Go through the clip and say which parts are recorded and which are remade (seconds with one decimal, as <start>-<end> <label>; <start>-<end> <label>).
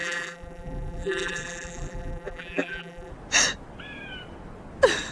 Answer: 0.0-3.1 remade; 3.1-5.1 recorded